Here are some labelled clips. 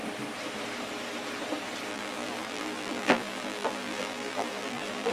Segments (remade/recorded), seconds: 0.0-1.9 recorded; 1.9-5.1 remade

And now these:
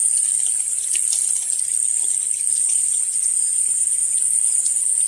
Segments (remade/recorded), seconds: 0.0-2.6 recorded; 2.6-4.2 remade; 4.2-5.1 recorded